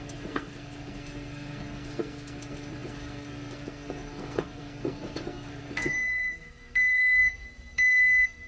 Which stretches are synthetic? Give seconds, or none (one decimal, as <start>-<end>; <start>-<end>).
0.0-8.5